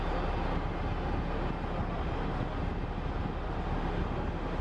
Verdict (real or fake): real